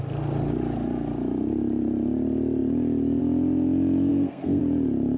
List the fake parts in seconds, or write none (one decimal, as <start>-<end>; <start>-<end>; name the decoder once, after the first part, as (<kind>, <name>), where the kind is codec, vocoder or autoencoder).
4.1-4.6 (codec, SNAC)